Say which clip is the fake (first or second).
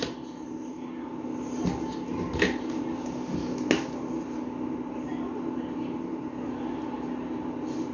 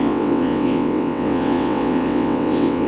second